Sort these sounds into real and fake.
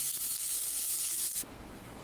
fake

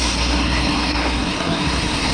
fake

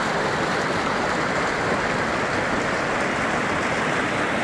real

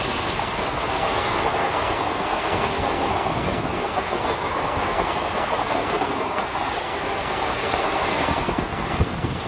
fake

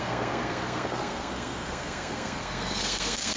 fake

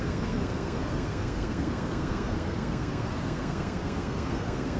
fake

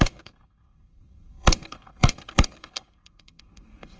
fake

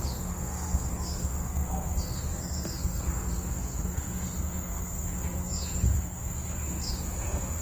fake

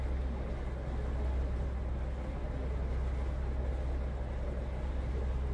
real